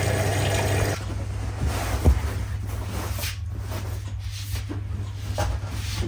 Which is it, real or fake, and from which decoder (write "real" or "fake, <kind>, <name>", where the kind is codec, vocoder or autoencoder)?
real